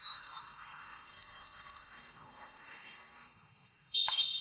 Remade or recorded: remade